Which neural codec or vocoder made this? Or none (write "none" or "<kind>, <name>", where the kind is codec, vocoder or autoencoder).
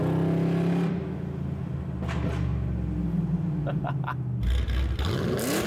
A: none